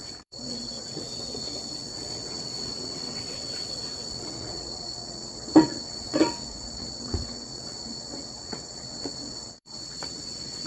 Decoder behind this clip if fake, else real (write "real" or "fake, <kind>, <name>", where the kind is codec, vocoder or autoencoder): fake, vocoder, WaveNeXt